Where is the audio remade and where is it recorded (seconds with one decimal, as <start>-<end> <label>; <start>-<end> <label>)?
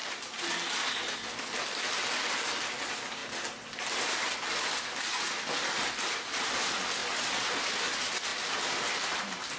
0.0-9.6 recorded